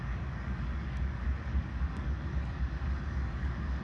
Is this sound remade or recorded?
remade